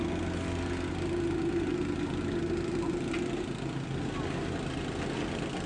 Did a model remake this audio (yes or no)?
no